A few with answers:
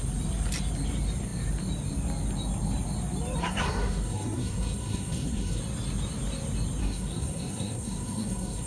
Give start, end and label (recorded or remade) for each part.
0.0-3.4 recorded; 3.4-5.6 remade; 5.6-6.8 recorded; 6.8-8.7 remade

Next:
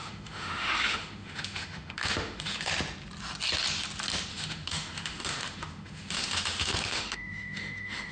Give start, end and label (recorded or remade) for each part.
0.0-2.7 remade; 2.7-4.3 recorded; 4.3-8.1 remade

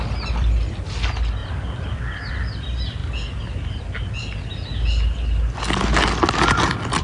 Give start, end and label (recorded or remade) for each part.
0.0-7.0 recorded